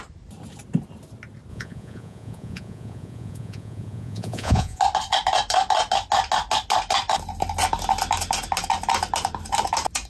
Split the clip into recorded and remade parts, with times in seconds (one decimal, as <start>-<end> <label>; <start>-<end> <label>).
0.0-1.5 recorded; 1.5-4.8 remade; 4.8-10.1 recorded